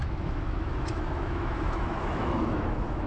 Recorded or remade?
remade